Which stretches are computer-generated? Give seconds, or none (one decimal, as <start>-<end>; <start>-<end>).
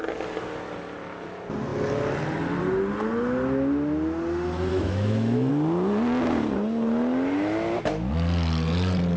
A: 4.7-5.5